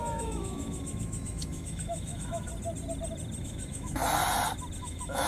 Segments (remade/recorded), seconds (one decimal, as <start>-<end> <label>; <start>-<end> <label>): 0.0-2.5 remade; 2.5-3.4 recorded; 3.4-4.0 remade; 4.0-4.8 recorded; 4.8-5.3 remade